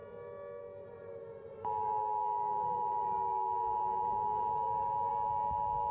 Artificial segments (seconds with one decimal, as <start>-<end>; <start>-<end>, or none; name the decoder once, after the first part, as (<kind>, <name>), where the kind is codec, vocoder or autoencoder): 1.6-5.1 (codec, DAC)

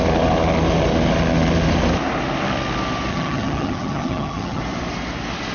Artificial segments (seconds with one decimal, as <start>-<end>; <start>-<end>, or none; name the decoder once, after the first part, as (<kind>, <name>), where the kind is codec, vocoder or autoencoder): 3.1-4.6 (vocoder, HiFi-GAN)